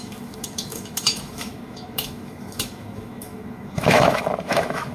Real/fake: fake